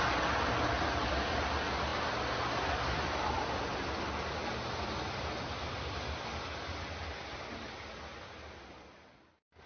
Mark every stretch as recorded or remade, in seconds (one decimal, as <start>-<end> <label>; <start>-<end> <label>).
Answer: 0.0-9.7 recorded